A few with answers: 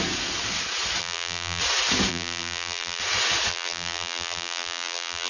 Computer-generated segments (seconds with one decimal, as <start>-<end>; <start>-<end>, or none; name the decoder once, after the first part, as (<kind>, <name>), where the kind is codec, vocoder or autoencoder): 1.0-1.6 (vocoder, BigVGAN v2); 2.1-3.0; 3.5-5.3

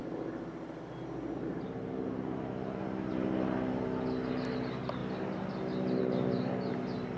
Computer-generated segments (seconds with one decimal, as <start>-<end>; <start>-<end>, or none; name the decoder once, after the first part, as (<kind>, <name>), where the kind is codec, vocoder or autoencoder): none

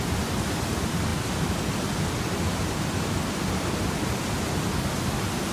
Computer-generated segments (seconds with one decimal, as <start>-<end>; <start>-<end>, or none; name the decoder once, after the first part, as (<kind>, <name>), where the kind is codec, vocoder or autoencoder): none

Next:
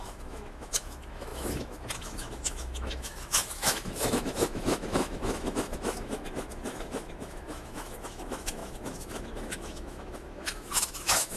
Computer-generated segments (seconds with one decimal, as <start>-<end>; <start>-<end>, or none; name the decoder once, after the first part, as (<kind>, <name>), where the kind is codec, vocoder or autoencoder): 0.0-11.4 (autoencoder, DAC-VAE)

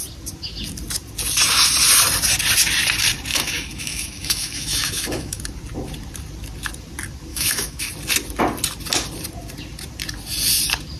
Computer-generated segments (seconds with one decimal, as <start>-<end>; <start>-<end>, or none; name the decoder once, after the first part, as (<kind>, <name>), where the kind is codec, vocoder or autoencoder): 3.3-5.4 (autoencoder, DAC-VAE); 7.3-7.9

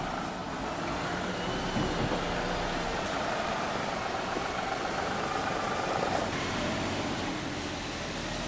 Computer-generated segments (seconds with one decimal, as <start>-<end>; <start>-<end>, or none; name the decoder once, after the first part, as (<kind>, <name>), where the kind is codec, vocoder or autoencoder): 2.9-7.3 (vocoder, BigVGAN v2)